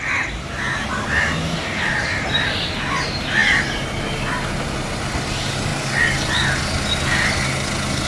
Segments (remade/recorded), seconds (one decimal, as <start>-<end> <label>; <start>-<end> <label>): 0.0-8.1 recorded